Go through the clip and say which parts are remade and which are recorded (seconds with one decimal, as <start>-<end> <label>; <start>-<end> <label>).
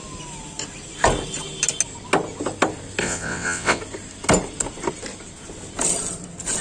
0.0-3.0 recorded; 3.0-3.8 remade; 3.8-6.6 recorded